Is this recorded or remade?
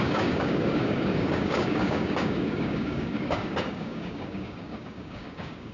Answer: remade